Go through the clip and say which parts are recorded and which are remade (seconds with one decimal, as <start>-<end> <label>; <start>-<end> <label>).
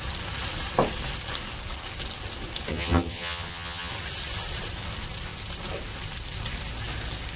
0.0-2.7 recorded; 2.7-3.9 remade; 3.9-7.4 recorded